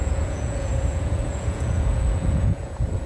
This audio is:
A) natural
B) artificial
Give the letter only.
B